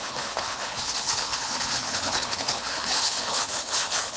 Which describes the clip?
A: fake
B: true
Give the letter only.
A